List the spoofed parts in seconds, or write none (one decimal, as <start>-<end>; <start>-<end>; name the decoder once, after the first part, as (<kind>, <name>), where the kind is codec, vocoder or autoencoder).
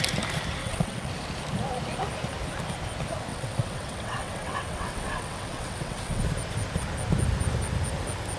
0.6-1.1 (vocoder, WaveNeXt); 3.3-6.2